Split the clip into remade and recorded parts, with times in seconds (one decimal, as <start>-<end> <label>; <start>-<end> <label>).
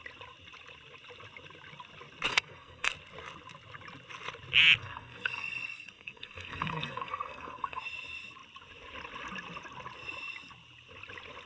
0.0-2.3 recorded; 2.3-2.9 remade; 2.9-4.8 recorded; 4.8-7.8 remade; 7.8-11.5 recorded